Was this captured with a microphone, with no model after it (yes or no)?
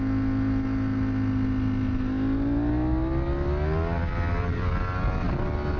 yes